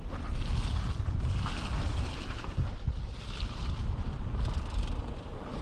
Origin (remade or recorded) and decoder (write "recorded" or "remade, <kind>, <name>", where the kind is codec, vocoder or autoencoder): recorded